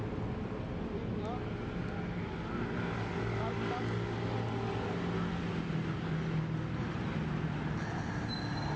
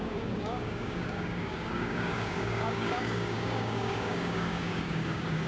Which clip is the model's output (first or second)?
second